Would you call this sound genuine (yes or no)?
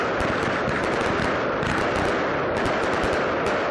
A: yes